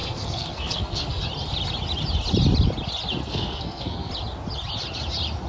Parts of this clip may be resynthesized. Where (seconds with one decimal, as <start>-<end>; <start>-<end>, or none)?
0.0-1.2; 3.2-4.1